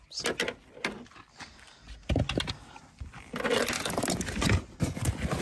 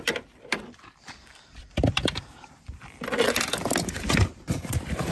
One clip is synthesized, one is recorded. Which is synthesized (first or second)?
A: second